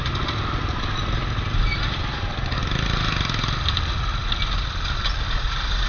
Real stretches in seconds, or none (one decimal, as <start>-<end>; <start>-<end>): 0.0-5.9